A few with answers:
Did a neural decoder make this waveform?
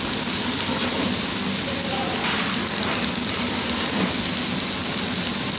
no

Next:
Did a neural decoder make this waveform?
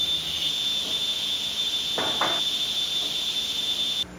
no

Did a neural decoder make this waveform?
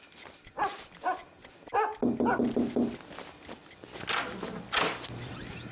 no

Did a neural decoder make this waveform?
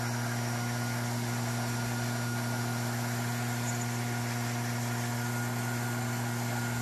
no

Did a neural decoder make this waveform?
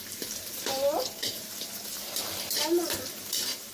yes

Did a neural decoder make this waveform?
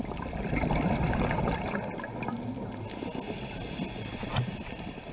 no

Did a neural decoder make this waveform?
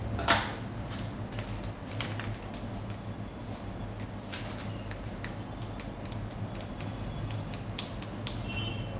no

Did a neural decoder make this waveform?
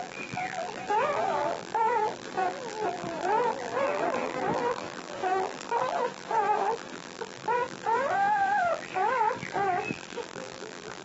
yes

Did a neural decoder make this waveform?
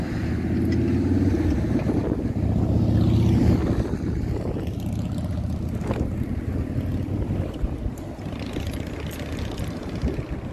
no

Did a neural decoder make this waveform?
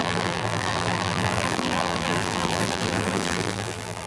yes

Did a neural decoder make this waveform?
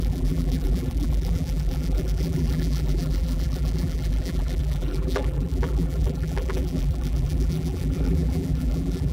yes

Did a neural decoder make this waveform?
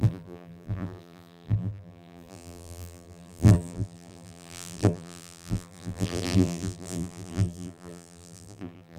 yes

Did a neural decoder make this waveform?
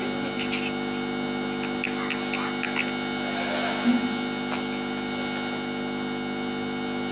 no